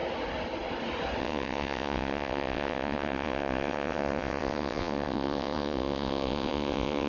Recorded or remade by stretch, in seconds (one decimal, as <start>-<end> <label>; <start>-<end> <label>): 0.0-1.2 recorded; 1.2-7.1 remade